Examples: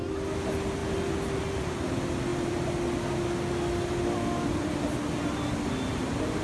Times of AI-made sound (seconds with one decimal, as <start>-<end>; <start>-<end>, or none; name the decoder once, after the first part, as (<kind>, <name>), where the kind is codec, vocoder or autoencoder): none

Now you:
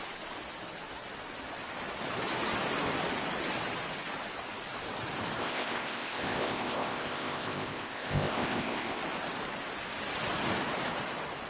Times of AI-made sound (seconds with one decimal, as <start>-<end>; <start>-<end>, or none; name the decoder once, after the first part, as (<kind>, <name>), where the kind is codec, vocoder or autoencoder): 5.4-9.0 (codec, ZipCodec)

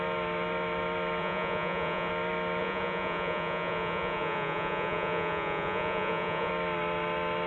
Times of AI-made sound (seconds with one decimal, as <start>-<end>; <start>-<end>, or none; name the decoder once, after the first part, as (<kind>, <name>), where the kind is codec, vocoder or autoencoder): 1.2-2.1 (vocoder, Vocos); 2.6-6.5

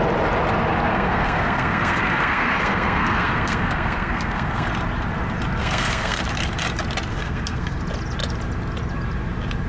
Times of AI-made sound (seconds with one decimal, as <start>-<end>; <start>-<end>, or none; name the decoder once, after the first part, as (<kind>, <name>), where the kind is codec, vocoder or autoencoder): 0.9-4.7 (codec, SNAC); 5.6-6.2; 7.1-7.8